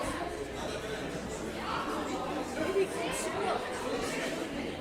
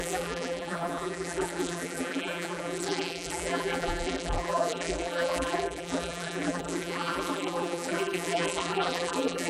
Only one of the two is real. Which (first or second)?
first